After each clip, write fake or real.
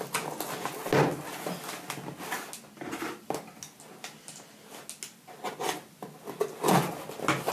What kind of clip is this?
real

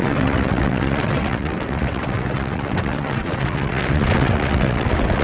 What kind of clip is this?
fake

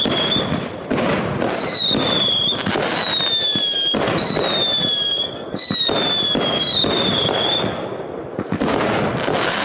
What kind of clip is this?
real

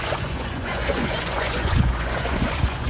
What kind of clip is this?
fake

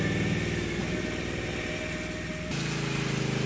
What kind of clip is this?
real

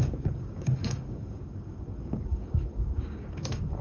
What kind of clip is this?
fake